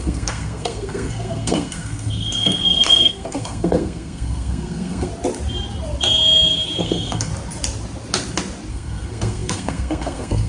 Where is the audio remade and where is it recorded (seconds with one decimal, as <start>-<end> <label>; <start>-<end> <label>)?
0.0-5.1 remade; 5.1-6.8 recorded; 6.8-7.3 remade; 7.3-8.7 recorded; 8.7-10.5 remade